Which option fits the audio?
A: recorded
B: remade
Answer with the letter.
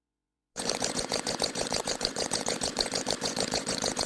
B